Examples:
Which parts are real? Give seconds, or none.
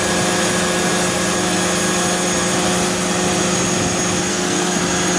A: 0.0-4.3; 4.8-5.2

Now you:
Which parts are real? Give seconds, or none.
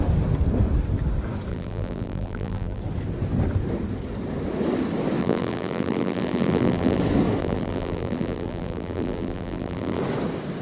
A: 0.0-1.5; 2.8-5.2; 7.0-7.4; 10.0-10.6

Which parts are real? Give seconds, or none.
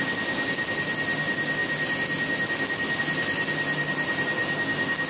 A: 0.0-5.1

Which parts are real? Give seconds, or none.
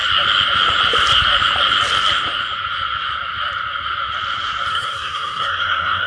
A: 0.0-4.7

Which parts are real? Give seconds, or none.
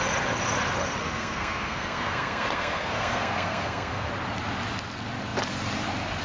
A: 0.0-1.0; 4.1-6.2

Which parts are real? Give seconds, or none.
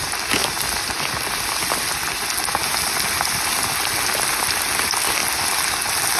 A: 0.0-6.2